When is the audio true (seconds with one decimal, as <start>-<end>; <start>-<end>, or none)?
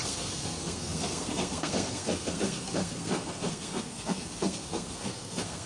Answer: none